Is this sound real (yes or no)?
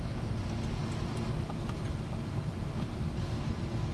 yes